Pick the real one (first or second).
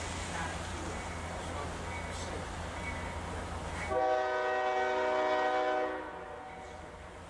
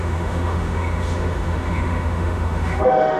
first